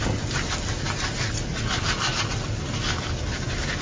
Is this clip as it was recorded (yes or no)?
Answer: yes